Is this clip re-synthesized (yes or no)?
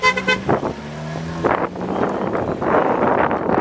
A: no